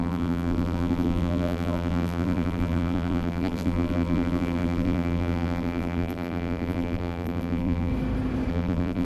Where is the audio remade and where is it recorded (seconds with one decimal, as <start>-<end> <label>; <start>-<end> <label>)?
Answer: 0.0-7.9 remade; 7.9-8.5 recorded; 8.5-9.0 remade